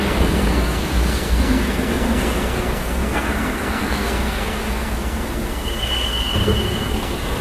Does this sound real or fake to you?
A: fake